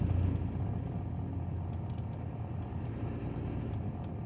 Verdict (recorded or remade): recorded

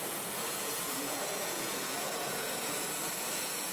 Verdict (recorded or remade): remade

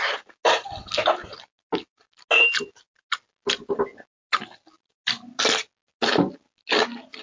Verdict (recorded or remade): recorded